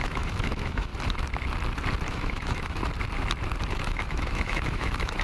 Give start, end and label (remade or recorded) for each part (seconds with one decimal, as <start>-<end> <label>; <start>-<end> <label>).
0.0-0.9 remade; 0.9-2.1 recorded; 2.1-2.8 remade; 2.8-3.7 recorded; 3.7-5.2 remade